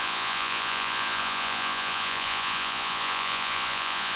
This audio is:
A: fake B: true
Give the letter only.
A